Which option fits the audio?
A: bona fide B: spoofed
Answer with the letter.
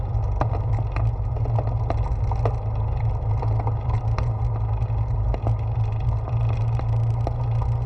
A